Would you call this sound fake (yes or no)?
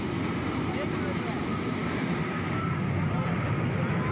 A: no